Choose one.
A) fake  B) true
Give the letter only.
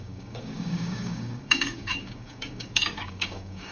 A